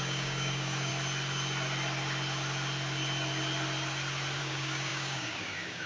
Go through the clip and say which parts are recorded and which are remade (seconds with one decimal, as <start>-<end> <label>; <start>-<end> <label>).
0.0-0.9 remade; 0.9-4.4 recorded; 4.4-5.9 remade